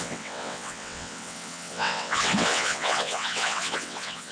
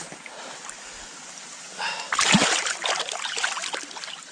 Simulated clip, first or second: first